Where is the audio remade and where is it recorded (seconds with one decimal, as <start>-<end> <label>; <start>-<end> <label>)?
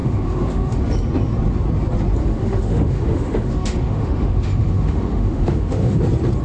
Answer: 0.0-0.8 remade; 0.8-2.2 recorded; 2.2-6.0 remade; 6.0-6.4 recorded